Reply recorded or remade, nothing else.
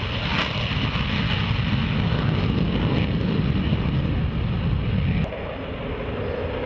recorded